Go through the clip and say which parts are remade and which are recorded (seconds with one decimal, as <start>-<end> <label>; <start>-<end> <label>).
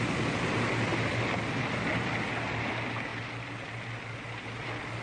0.0-5.0 recorded